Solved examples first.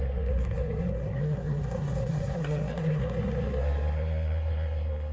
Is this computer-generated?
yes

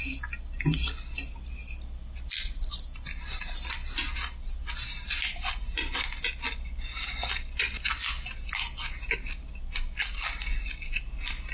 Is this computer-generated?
no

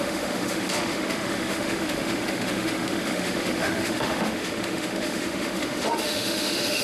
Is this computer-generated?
yes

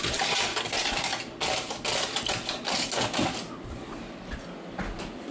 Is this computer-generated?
no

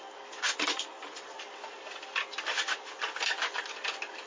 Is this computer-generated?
no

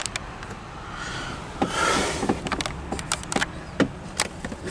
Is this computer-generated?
no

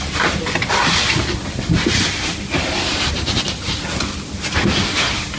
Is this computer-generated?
no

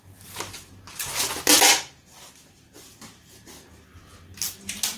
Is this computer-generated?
no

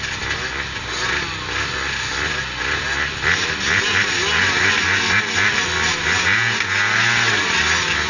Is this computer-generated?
no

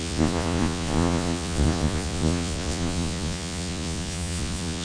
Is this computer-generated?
yes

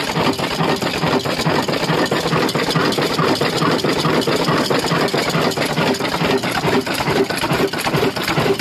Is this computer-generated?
no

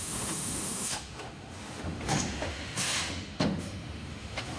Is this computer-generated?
yes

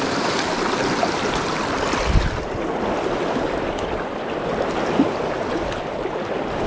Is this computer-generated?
no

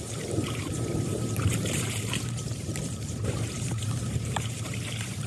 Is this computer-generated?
yes